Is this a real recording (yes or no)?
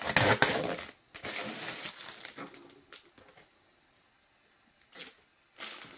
yes